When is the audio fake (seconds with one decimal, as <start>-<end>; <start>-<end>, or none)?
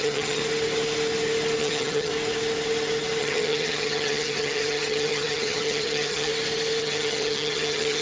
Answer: 0.0-0.4; 1.6-2.1; 3.2-6.3; 6.8-8.0